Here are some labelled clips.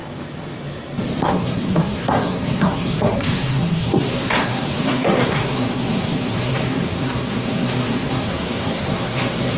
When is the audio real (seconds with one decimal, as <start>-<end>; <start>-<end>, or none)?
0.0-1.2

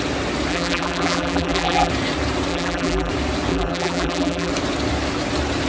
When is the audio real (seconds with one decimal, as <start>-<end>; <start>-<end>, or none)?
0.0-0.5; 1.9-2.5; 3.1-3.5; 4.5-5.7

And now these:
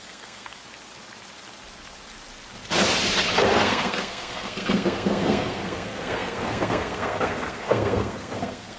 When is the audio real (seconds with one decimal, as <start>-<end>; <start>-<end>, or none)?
0.6-3.5

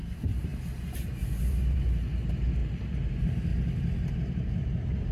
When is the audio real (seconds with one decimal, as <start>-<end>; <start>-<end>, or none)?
2.6-3.1; 3.5-4.1

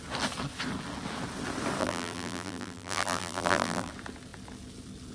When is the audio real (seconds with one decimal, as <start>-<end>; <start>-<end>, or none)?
0.0-1.8; 3.9-5.1